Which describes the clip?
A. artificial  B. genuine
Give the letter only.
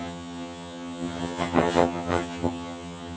A